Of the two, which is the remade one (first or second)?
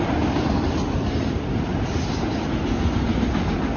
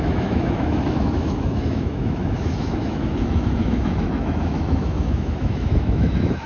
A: second